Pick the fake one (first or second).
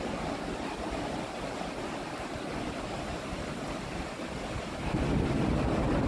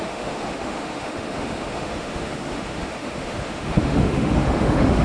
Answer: second